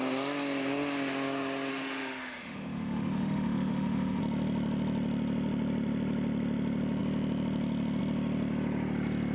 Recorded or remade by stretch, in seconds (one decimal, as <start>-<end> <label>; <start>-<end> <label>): 0.0-1.7 recorded; 1.7-4.2 remade; 4.2-9.3 recorded